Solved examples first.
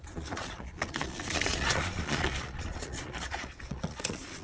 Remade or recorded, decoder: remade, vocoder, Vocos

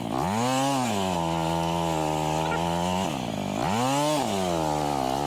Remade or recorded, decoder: recorded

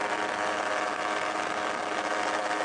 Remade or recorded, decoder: recorded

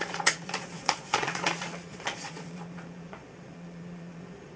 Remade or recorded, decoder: remade, vocoder, Vocos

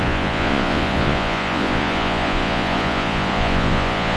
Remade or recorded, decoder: remade, vocoder, Vocos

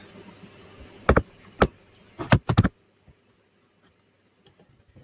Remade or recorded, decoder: recorded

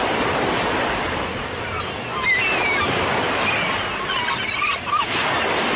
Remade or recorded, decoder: recorded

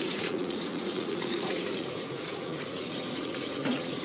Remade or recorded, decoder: remade, vocoder, Vocos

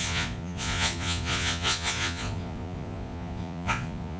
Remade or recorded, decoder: remade, vocoder, Vocos